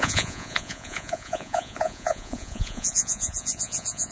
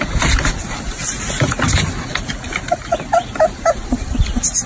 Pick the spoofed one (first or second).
first